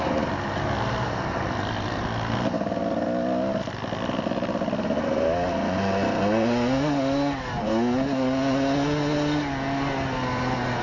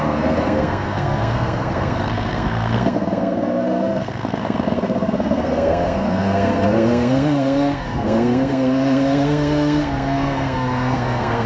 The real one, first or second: first